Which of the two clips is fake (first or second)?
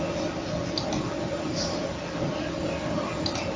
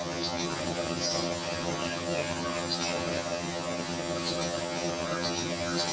second